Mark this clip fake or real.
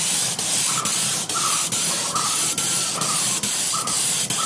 real